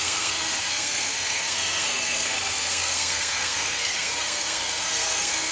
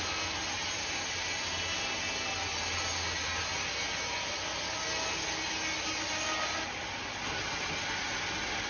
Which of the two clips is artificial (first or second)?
first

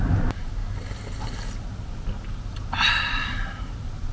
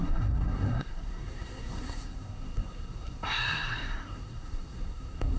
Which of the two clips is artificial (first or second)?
second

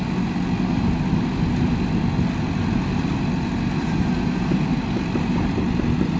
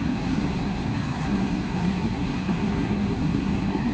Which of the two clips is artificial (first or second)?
second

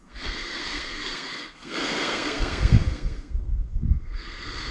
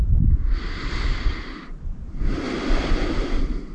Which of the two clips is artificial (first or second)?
first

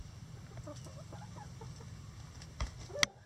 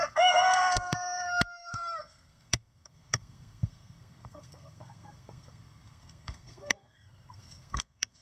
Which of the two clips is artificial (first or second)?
second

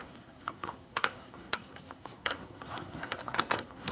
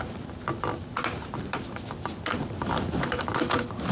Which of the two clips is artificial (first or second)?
first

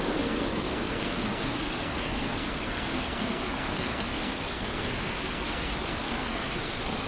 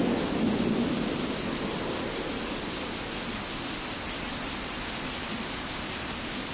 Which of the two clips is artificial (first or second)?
first